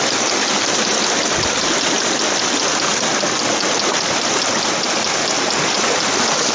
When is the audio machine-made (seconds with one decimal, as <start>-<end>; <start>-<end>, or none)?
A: none